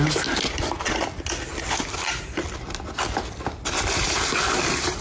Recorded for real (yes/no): yes